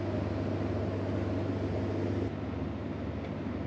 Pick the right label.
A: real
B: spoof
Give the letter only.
A